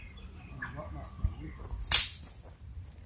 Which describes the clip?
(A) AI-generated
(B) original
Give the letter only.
B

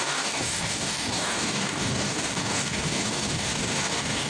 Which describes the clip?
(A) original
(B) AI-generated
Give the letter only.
B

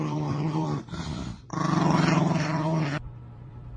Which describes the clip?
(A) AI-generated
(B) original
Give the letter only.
A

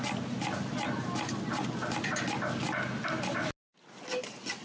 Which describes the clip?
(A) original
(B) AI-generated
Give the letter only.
A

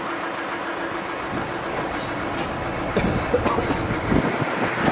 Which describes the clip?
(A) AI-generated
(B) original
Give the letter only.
B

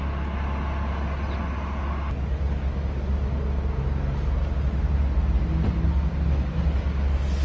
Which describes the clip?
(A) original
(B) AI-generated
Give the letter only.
A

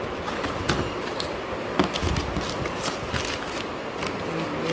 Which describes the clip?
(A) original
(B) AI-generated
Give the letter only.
A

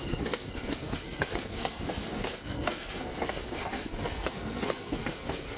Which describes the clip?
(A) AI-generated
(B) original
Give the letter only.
A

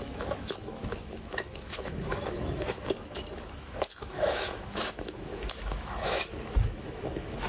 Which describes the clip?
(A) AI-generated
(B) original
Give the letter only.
A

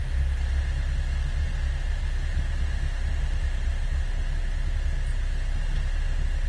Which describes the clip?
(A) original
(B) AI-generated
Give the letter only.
A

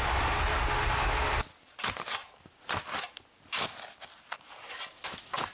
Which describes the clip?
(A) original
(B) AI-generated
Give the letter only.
A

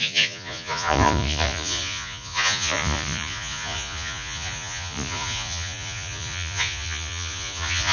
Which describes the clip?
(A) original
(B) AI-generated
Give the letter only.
B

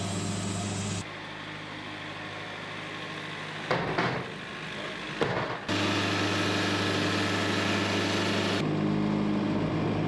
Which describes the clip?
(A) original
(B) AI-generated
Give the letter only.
A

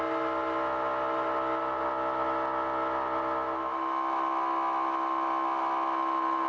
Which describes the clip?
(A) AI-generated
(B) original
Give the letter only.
B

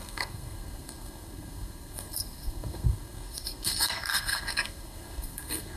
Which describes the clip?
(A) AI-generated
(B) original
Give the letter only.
A